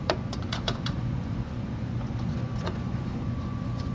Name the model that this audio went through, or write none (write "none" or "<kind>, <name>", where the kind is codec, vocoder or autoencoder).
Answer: vocoder, Vocos